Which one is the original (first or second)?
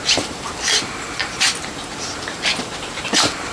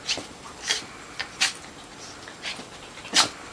second